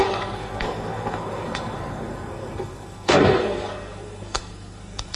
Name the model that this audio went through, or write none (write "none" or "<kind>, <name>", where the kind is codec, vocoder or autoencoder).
codec, SNAC